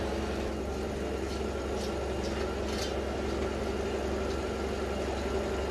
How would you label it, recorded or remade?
recorded